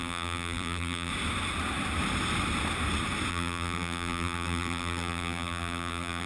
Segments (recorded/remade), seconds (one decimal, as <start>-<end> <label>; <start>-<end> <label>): 0.0-1.1 remade; 1.1-3.3 recorded; 3.3-6.3 remade